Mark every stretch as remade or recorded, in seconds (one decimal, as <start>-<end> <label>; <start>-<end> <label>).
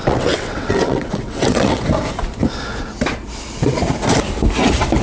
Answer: 0.0-1.8 remade; 1.8-5.0 recorded